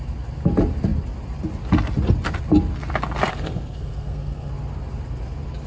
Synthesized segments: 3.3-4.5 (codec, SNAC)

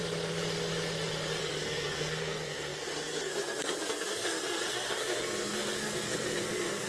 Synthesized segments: 1.4-6.9 (codec, SNAC)

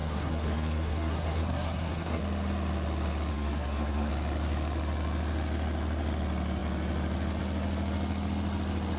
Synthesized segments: 0.0-2.2 (codec, SNAC); 3.3-4.1

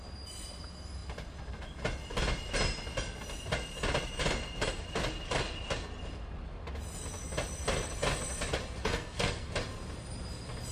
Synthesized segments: 8.8-9.5 (codec, SNAC)

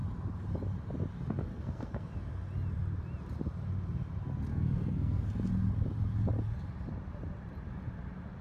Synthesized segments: 1.5-2.1 (codec, SNAC); 4.5-5.3

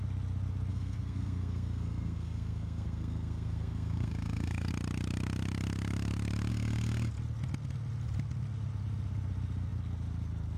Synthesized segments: 0.7-4.7 (codec, SNAC); 6.5-7.1

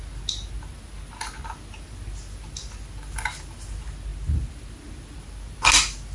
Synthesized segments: none

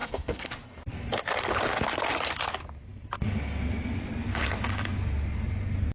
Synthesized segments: 0.0-0.5 (codec, SNAC)